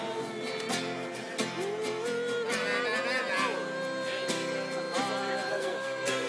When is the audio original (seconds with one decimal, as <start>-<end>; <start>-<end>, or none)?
0.0-5.5